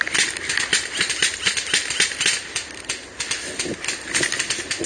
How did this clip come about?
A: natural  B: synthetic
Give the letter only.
A